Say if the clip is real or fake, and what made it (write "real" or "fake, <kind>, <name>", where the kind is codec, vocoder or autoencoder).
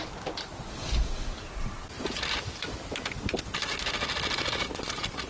real